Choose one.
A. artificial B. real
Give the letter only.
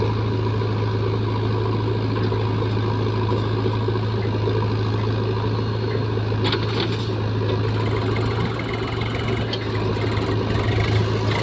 B